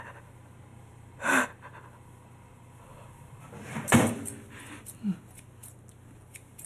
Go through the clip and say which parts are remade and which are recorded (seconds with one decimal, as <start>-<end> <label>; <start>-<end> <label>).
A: 0.0-0.7 recorded; 0.7-1.5 remade; 1.5-2.9 recorded; 2.9-4.1 remade; 4.1-6.7 recorded